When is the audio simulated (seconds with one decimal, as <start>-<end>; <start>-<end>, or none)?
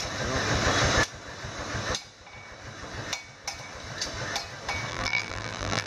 4.9-5.9